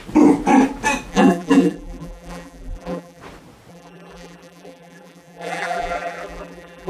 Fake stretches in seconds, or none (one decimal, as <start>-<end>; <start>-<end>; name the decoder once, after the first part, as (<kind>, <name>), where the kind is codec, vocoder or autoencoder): 1.1-3.2 (vocoder, BigVGAN v2); 3.7-6.9